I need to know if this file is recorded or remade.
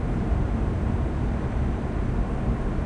remade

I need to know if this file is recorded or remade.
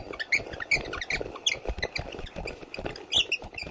recorded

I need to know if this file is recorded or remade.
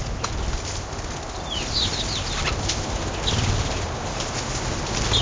recorded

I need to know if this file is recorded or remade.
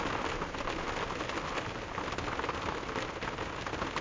recorded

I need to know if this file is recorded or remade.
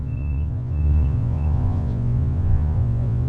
remade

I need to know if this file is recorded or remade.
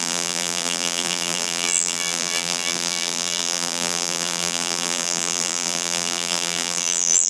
remade